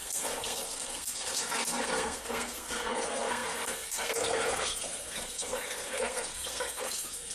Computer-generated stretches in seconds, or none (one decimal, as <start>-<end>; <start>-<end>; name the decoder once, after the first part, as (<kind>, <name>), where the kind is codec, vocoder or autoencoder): 0.0-7.3 (codec, SNAC)

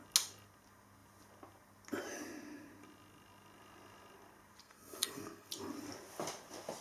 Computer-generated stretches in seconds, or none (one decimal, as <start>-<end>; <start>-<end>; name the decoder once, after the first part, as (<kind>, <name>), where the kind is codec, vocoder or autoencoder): 4.6-5.5 (codec, SNAC)

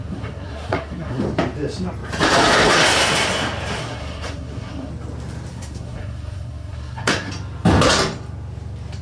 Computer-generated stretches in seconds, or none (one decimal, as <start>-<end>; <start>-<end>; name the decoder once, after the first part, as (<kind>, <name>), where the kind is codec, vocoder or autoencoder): 0.0-1.2 (codec, SNAC); 3.8-4.9; 5.5-7.3

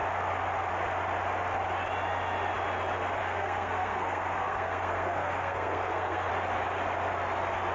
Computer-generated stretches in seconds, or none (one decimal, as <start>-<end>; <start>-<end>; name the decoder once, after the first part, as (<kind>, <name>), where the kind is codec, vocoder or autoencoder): 3.2-6.3 (codec, SNAC)

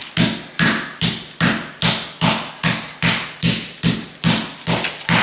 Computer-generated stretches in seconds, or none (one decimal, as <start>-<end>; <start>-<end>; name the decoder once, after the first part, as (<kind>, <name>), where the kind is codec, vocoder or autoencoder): none

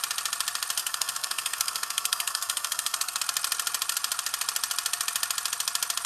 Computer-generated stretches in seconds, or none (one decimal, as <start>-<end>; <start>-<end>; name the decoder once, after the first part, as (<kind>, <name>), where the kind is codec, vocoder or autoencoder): 0.8-3.2 (codec, SNAC)

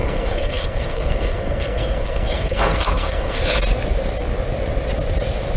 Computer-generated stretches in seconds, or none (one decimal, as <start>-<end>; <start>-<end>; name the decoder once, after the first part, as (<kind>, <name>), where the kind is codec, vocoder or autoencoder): 0.0-3.4 (codec, SNAC)

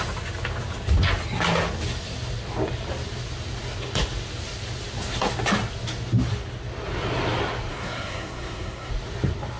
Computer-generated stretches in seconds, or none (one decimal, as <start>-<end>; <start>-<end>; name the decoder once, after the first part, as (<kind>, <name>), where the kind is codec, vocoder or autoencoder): 7.7-8.9 (codec, SNAC)